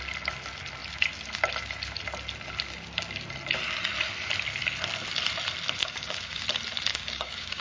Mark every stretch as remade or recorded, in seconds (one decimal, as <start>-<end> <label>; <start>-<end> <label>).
0.0-5.8 recorded; 5.8-6.4 remade; 6.4-6.9 recorded; 6.9-7.6 remade